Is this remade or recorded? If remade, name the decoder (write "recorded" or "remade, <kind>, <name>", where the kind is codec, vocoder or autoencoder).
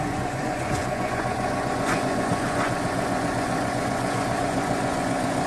remade, vocoder, Vocos